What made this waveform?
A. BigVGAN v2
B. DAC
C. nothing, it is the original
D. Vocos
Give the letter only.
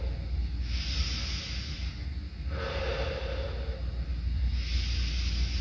C